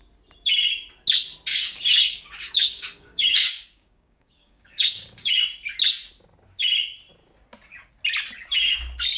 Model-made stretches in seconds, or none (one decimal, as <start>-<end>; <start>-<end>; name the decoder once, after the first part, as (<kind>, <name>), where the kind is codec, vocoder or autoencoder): 1.5-5.4 (codec, DAC)